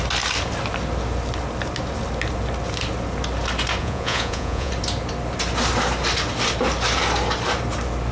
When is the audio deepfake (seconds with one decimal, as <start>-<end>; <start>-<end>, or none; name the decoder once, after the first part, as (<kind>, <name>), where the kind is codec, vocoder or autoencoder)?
3.8-4.7 (vocoder, Vocos)